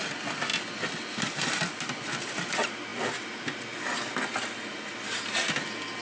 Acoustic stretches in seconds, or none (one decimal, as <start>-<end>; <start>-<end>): 0.0-6.0